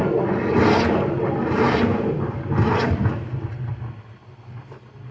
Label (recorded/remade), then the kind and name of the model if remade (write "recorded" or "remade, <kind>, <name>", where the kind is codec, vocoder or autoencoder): recorded